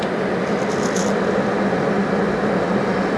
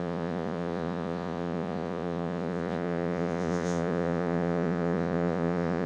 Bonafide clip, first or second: first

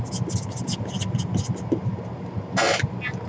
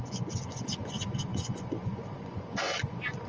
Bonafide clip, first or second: first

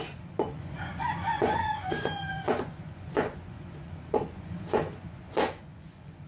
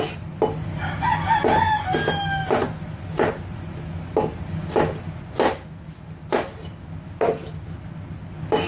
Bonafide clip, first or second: second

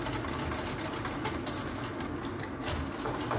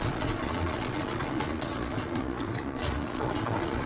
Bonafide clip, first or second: first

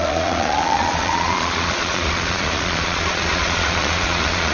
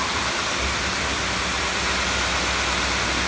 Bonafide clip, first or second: second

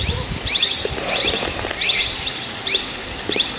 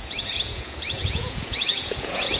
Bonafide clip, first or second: first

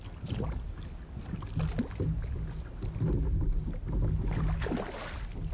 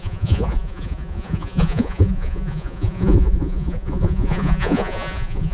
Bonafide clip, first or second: first